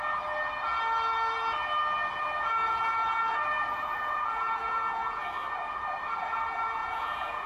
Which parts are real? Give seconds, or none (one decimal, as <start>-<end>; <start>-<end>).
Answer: 0.0-2.6; 5.2-6.8